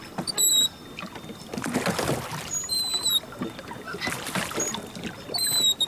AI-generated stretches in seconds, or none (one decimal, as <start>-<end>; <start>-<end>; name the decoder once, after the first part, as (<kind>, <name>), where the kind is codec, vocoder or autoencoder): none